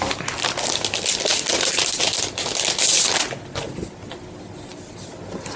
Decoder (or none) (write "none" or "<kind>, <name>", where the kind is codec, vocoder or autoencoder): none